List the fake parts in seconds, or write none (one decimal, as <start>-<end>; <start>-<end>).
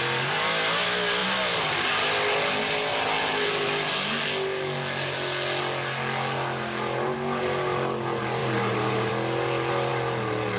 8.4-9.1